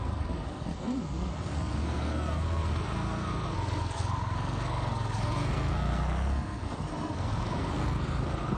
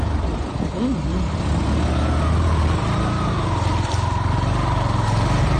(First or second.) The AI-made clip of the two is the first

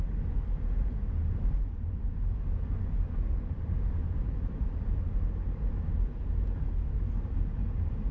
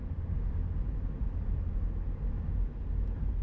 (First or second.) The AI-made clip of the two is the first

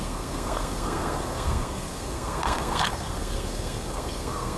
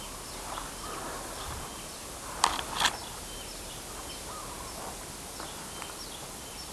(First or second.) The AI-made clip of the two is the first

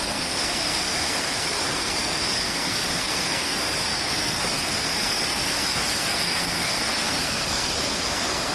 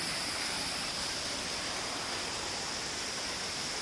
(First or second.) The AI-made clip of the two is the first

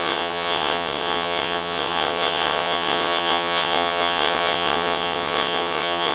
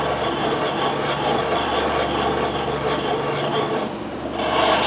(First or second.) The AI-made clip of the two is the first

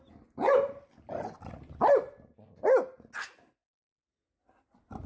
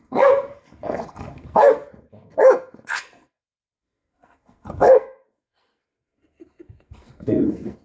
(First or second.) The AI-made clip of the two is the second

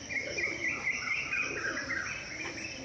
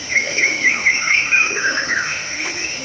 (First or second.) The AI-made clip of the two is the second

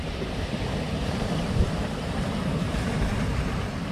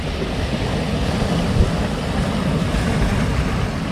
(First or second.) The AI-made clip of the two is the first